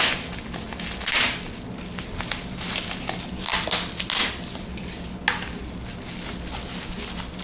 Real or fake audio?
real